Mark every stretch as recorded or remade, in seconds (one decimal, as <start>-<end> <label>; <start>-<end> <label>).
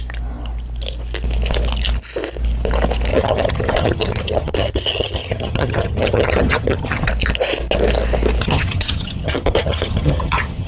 0.0-3.1 recorded; 3.1-7.1 remade; 7.1-8.4 recorded; 8.4-10.7 remade